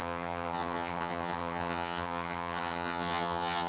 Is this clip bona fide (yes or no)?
no